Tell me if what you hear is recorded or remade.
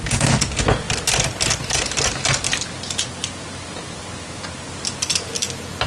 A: recorded